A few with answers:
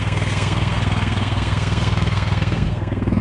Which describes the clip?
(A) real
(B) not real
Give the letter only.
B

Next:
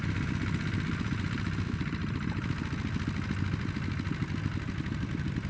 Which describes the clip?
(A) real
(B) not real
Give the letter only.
A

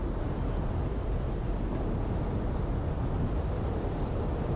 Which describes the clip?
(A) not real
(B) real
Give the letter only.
B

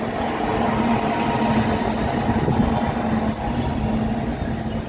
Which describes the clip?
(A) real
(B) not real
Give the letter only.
A